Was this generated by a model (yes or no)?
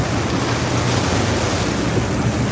no